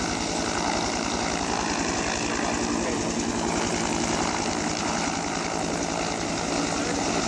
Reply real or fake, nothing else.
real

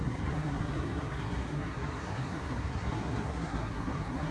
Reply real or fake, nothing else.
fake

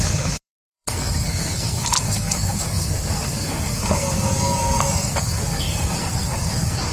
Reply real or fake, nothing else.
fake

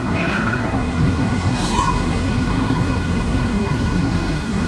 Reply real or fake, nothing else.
fake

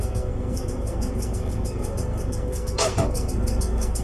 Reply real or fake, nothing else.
fake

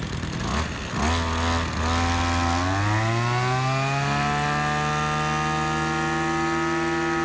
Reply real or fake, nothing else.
real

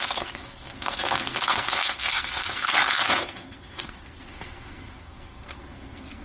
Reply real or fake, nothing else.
fake